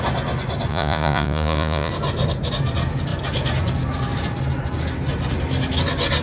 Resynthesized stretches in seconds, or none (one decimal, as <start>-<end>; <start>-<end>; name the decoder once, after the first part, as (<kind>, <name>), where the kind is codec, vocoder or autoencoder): 0.7-1.9 (vocoder, Vocos)